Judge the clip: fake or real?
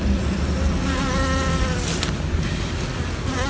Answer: real